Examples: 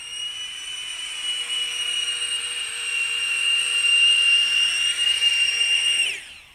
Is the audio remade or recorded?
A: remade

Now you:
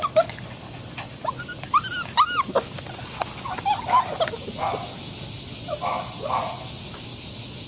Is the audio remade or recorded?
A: recorded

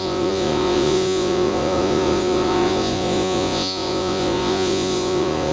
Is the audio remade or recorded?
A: remade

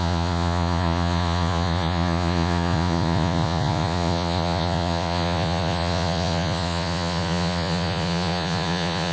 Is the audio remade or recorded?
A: remade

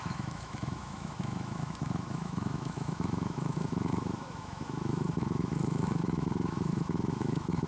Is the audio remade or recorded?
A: remade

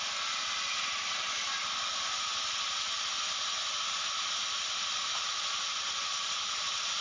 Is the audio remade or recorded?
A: recorded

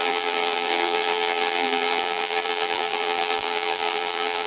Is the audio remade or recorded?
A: remade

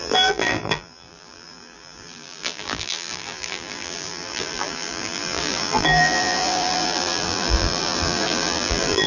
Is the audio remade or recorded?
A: remade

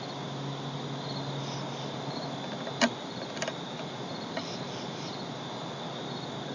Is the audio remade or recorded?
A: recorded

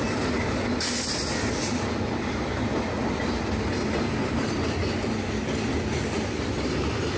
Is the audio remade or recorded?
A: recorded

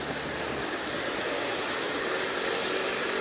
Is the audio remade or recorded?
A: recorded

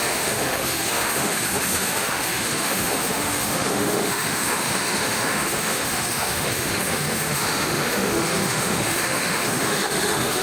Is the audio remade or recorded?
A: remade